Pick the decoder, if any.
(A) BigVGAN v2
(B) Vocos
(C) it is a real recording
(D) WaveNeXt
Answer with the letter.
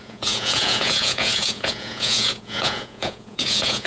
B